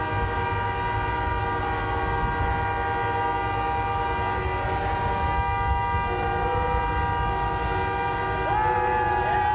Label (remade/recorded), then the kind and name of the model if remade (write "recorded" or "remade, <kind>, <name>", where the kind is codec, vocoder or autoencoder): recorded